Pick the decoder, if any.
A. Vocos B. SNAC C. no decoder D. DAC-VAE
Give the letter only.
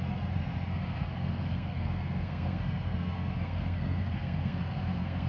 B